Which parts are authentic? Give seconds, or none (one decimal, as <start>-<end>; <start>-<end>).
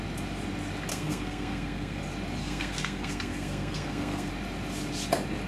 0.0-0.9; 2.0-2.4; 4.3-5.5